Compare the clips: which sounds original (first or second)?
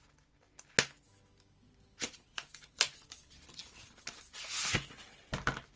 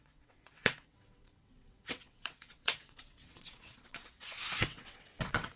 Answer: first